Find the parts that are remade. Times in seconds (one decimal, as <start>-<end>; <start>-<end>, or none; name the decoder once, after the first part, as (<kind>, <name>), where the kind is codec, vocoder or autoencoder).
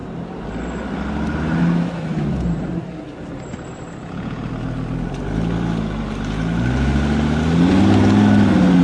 4.0-4.5 (vocoder, Vocos)